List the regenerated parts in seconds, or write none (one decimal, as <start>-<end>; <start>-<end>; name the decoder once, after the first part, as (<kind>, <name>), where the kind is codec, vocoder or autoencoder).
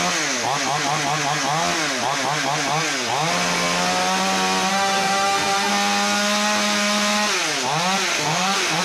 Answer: 4.7-5.7 (autoencoder, DAC-VAE); 8.1-8.8